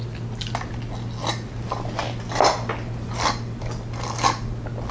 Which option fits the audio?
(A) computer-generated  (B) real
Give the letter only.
B